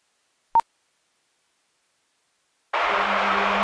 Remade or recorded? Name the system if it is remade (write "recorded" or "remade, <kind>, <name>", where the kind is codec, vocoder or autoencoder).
recorded